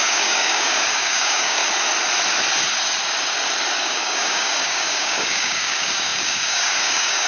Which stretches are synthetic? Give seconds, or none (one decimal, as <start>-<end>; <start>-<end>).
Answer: 0.0-1.6; 3.8-7.3